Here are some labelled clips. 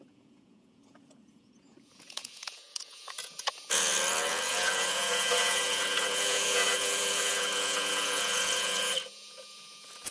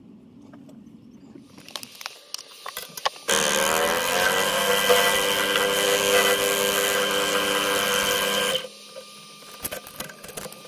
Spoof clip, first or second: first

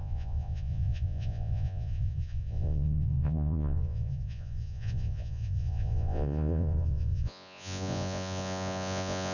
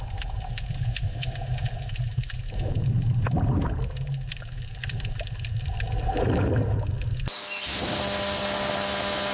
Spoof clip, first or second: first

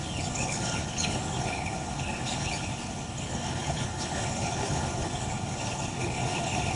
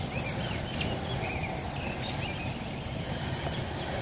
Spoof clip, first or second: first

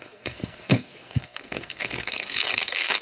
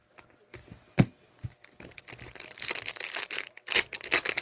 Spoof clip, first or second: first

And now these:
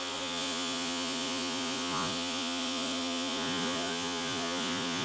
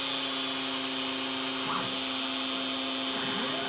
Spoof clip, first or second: first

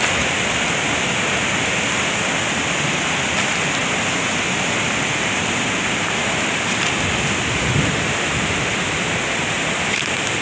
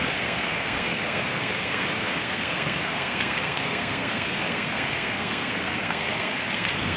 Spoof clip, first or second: second